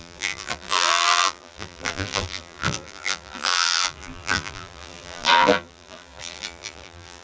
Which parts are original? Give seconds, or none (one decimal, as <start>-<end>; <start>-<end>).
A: none